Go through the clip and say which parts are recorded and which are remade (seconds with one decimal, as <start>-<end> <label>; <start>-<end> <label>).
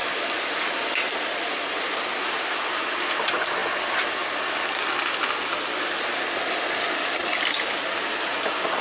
0.0-8.8 recorded